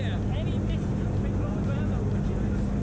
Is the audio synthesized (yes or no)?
no